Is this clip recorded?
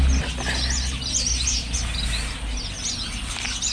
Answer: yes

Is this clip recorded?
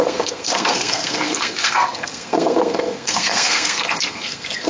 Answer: no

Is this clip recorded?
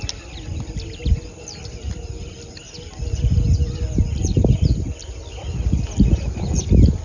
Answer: yes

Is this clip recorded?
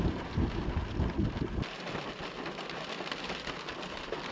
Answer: yes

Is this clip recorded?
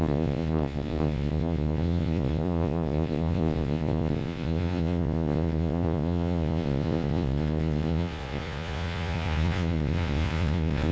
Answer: no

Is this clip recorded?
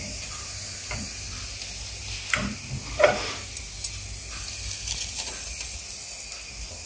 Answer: yes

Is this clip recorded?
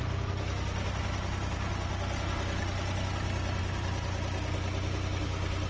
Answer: yes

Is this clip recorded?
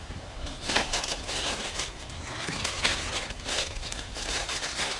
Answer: no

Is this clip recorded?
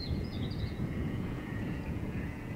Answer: no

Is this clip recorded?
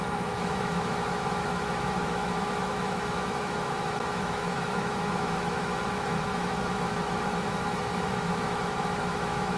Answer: no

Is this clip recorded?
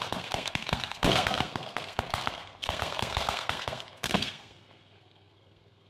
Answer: no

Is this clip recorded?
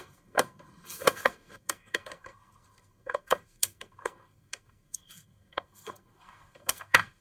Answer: no